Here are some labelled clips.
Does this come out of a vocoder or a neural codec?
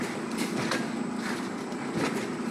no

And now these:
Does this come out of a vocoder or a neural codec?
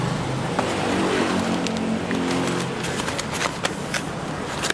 no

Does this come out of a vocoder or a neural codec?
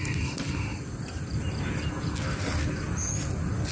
no